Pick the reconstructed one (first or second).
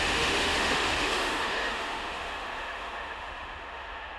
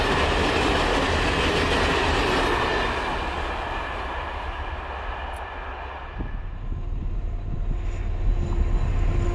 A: first